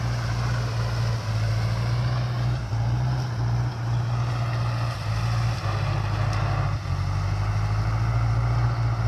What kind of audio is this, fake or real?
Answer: real